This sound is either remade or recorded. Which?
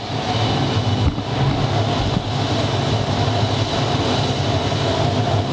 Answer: recorded